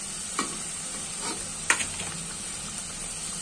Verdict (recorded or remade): recorded